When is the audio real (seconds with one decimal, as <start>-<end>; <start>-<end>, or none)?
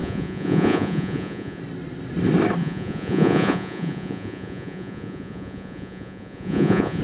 1.6-2.6